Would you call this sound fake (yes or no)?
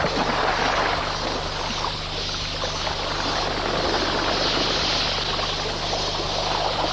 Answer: no